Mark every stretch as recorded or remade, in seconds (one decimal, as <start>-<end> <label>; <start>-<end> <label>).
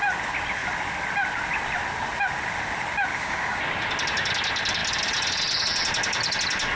0.0-3.1 recorded; 3.1-3.6 remade; 3.6-6.8 recorded